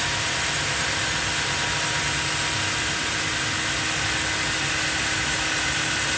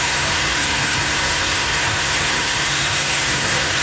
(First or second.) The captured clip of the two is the first